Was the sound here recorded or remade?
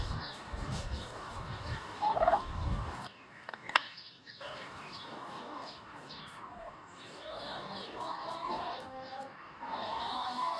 remade